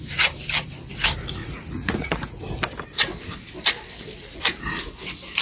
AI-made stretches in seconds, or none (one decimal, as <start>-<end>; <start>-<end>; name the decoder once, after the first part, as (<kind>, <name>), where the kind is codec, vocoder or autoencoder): 1.4-2.4 (vocoder, Vocos)